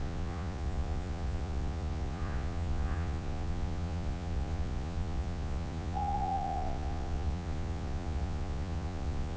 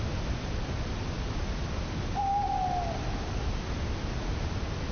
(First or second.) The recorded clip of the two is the second